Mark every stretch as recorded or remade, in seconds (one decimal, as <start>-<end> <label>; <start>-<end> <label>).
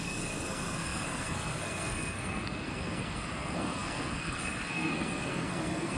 0.0-6.0 remade